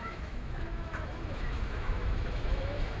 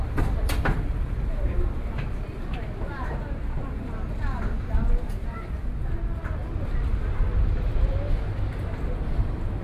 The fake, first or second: first